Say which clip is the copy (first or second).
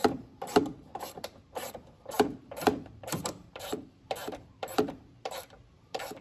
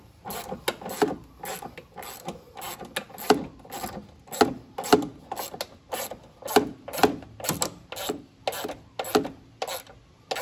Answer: first